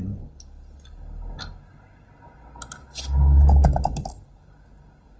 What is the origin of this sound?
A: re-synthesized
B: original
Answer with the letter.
B